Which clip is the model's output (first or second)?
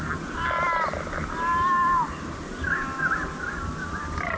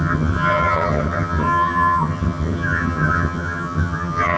second